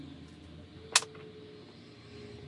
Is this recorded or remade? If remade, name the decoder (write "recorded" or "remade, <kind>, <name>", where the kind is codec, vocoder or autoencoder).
recorded